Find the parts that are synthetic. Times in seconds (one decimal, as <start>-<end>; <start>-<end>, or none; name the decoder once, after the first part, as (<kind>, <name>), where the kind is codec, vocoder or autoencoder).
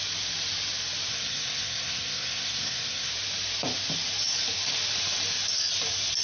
1.1-3.1 (codec, SNAC)